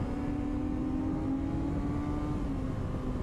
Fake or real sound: real